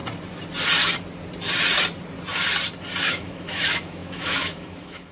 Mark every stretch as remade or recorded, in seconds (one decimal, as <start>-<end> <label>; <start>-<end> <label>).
0.0-3.0 recorded; 3.0-5.1 remade